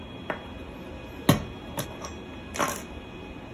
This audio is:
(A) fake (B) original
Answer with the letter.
B